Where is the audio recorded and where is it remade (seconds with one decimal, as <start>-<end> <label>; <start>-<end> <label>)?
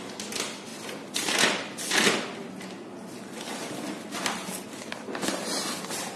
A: 0.0-6.2 recorded